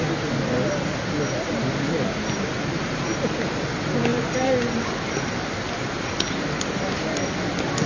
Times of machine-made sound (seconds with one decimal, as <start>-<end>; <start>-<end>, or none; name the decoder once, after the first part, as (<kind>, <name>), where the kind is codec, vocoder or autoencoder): none